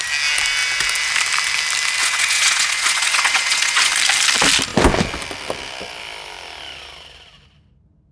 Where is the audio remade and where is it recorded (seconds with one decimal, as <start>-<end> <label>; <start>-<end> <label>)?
0.0-2.0 recorded; 2.0-3.9 remade; 3.9-8.1 recorded